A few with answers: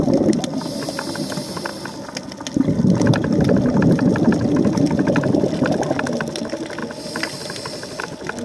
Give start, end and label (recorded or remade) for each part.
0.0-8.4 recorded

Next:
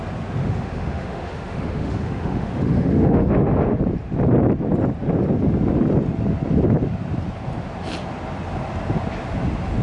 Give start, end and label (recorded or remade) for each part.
0.0-0.4 recorded; 0.4-3.8 remade; 3.8-9.8 recorded

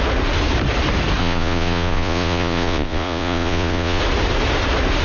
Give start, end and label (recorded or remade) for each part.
0.0-1.2 recorded; 1.2-4.0 remade; 4.0-5.0 recorded